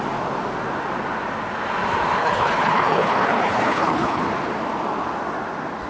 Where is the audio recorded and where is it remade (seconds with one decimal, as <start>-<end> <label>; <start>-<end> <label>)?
0.0-2.2 recorded; 2.2-4.2 remade; 4.2-5.9 recorded

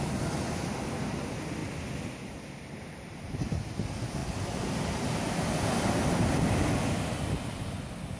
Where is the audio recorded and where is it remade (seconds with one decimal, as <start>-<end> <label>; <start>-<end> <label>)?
0.0-8.2 recorded

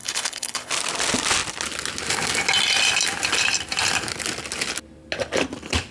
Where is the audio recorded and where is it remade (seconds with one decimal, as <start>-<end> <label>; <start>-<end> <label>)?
0.0-0.7 remade; 0.7-5.9 recorded

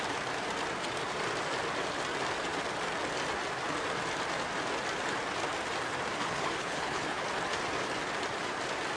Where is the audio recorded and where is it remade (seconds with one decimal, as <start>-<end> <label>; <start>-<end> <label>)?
0.0-6.2 recorded; 6.2-7.2 remade; 7.2-9.0 recorded